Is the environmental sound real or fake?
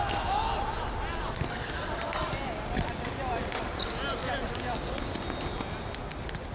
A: real